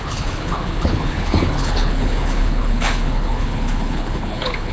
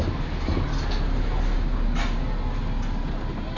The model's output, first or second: first